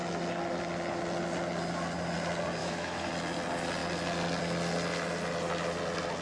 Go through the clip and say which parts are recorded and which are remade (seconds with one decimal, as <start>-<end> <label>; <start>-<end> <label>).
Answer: 0.0-2.6 recorded; 2.6-3.1 remade; 3.1-6.2 recorded